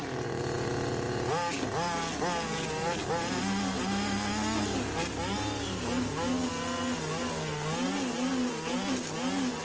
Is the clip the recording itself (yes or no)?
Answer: yes